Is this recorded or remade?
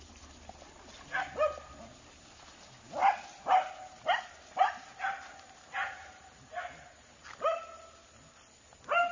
recorded